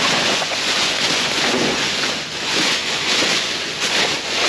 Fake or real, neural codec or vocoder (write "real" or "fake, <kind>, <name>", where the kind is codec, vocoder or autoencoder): fake, vocoder, Vocos